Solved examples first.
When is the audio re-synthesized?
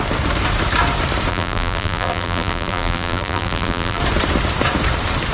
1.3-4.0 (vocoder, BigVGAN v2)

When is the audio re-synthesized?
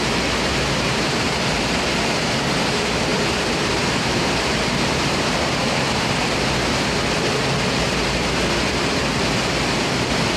0.5-2.3 (vocoder, BigVGAN v2); 3.1-6.2